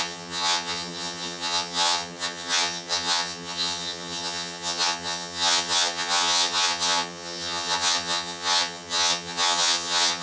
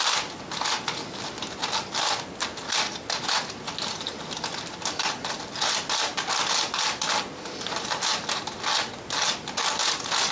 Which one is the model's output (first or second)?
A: first